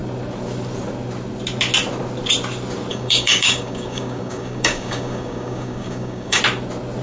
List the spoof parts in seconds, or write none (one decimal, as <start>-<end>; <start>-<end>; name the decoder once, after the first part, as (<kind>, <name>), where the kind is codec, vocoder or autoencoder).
2.9-6.4 (codec, DAC)